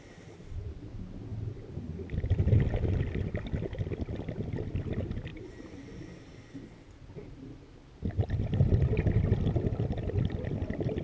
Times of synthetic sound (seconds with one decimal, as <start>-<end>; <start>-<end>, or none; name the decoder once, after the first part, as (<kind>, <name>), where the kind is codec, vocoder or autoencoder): none